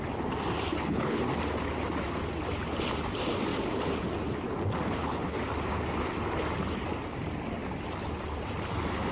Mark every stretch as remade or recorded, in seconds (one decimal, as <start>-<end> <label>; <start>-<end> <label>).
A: 0.0-0.7 recorded; 0.7-1.2 remade; 1.2-9.1 recorded